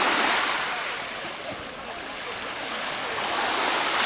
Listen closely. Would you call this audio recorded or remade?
recorded